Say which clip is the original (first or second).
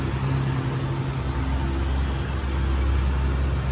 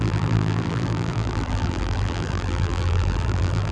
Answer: first